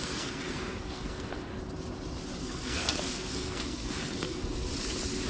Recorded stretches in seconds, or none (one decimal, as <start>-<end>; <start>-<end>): 1.5-2.4; 4.4-5.3